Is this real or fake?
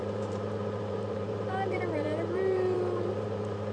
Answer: fake